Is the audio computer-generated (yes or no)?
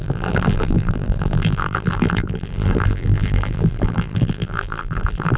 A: yes